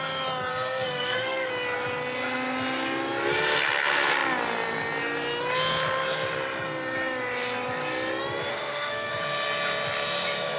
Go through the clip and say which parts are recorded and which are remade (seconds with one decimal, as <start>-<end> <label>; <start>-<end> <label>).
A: 0.0-0.5 recorded; 0.5-1.5 remade; 1.5-8.5 recorded; 8.5-9.1 remade; 9.1-10.6 recorded